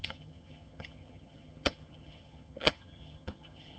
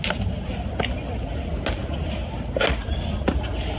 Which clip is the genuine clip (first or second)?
second